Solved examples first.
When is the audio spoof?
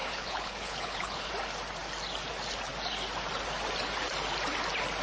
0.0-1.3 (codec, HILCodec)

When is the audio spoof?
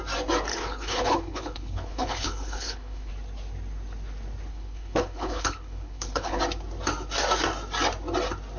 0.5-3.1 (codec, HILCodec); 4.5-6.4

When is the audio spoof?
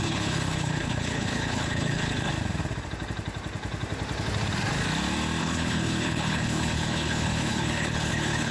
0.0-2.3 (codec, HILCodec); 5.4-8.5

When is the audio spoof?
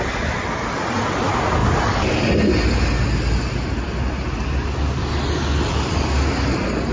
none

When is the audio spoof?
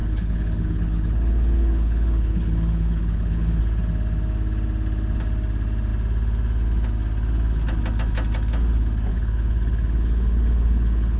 0.0-3.6 (codec, HILCodec); 9.1-11.2